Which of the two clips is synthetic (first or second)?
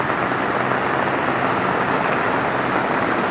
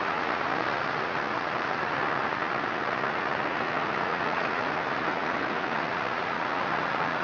second